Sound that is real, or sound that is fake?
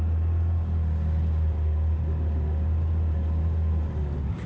real